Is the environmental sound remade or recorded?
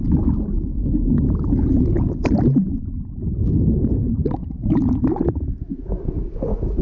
recorded